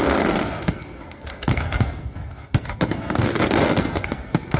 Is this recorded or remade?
remade